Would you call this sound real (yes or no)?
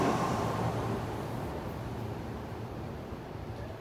yes